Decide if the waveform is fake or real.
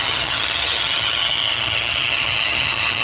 fake